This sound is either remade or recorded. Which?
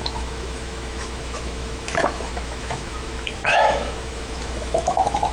remade